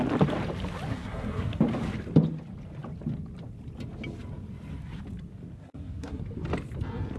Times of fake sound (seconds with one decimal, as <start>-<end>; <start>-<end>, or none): 0.9-1.6; 5.6-6.2